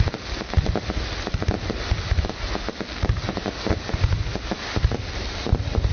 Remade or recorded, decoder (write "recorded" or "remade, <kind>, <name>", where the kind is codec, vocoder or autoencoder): recorded